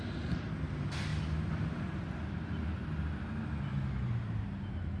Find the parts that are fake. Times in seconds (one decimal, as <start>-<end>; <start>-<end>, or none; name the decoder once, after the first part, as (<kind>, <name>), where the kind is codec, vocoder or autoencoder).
none